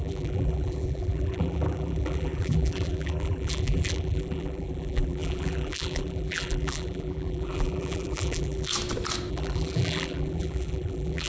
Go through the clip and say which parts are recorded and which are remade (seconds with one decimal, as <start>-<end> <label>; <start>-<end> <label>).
0.0-8.7 remade; 8.7-9.3 recorded; 9.3-11.3 remade